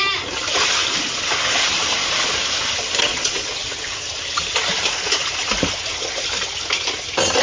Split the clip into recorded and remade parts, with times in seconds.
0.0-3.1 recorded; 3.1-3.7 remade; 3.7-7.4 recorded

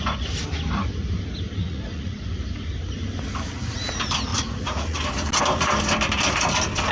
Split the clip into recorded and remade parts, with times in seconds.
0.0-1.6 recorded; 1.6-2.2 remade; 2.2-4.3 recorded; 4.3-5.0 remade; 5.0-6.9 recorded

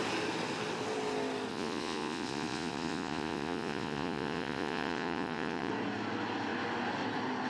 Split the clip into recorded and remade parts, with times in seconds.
0.0-1.5 recorded; 1.5-5.7 remade; 5.7-7.5 recorded